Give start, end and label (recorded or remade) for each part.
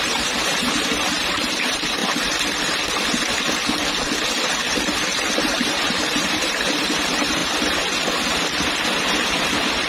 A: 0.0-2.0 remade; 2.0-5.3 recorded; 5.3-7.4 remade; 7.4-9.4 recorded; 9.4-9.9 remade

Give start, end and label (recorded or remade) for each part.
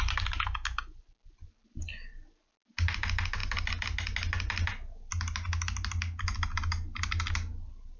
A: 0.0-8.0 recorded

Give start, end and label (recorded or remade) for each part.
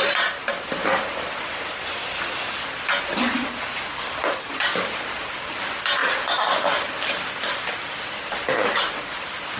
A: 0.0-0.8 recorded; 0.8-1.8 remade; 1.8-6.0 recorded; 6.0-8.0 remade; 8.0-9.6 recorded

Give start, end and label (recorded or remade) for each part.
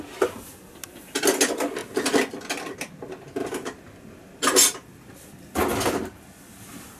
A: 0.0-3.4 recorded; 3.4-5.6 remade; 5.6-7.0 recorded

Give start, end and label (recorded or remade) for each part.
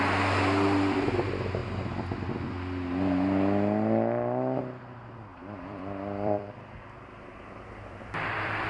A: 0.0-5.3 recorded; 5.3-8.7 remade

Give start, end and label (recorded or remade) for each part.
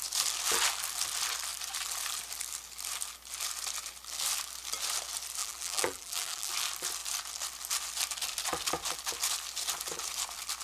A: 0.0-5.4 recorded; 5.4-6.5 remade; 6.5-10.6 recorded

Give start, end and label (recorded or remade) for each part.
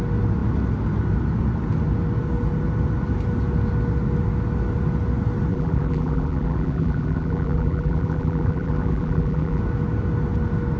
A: 0.0-5.5 recorded; 5.5-9.6 remade; 9.6-10.8 recorded